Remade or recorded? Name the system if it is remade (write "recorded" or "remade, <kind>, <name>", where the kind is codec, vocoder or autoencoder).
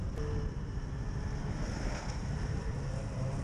remade, vocoder, BigVGAN v2